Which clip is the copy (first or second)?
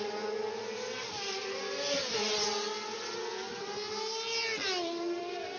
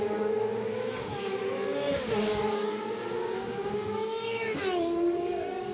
second